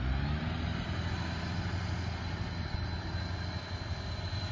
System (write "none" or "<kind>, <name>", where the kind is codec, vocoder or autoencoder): none